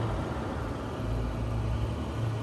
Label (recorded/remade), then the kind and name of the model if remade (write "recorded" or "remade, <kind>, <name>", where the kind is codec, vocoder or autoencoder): recorded